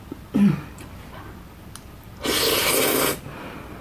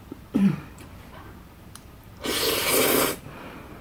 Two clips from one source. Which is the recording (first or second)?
first